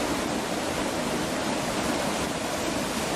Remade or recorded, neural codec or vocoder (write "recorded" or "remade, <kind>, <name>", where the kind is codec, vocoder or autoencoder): remade, vocoder, BigVGAN v2